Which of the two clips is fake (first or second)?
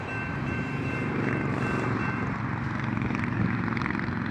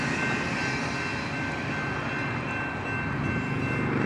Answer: first